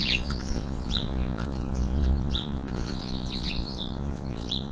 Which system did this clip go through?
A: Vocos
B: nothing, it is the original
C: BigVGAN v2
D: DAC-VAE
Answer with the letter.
A